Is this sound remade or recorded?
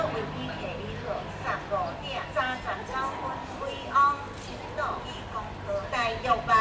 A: recorded